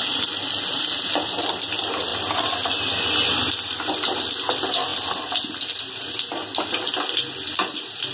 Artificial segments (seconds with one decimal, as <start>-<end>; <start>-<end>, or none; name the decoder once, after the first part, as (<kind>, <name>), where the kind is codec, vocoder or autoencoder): none